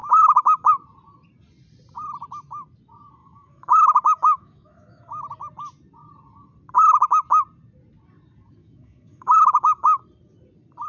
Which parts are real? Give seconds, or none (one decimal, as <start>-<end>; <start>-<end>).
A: 0.7-3.2; 5.2-8.6; 10.0-10.9